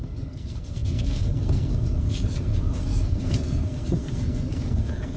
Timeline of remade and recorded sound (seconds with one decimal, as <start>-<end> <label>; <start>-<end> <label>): 0.0-5.2 remade